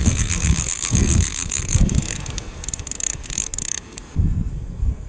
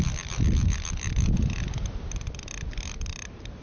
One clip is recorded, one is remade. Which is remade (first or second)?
first